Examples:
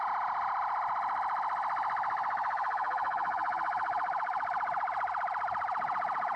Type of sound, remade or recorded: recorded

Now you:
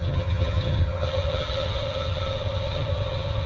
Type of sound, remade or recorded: remade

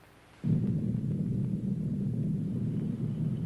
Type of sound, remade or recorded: recorded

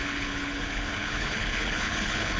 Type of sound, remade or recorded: remade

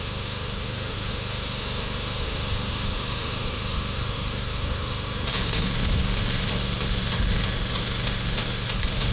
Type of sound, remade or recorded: remade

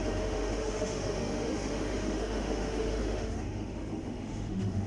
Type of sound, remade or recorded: remade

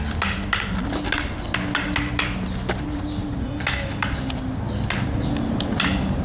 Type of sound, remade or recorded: recorded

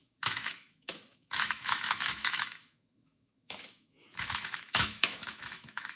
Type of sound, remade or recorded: remade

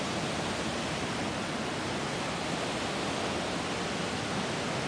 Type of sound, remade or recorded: recorded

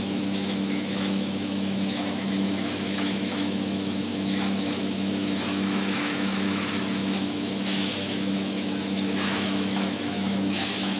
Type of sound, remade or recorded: remade